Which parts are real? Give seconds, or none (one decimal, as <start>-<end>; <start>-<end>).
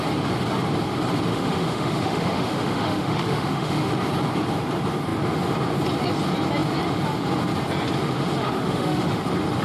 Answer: 0.0-1.3; 3.9-8.4; 9.2-9.6